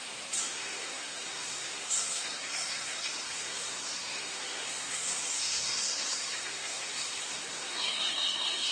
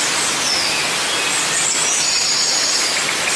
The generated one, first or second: first